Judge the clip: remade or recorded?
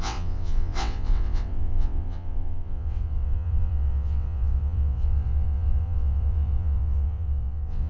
remade